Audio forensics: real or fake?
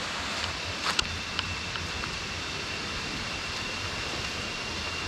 real